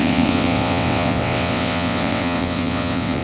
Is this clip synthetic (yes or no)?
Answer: yes